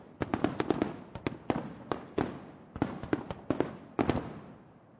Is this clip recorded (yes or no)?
yes